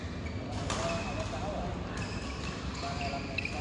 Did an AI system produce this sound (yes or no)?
no